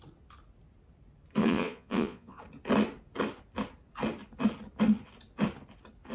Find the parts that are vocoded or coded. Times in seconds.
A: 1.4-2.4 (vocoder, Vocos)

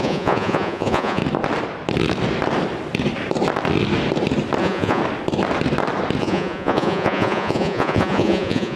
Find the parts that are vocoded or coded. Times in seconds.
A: 0.0-1.2 (vocoder, Vocos); 4.6-5.0; 6.2-8.8